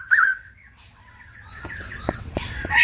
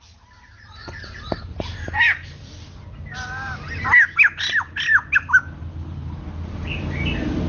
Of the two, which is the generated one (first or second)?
first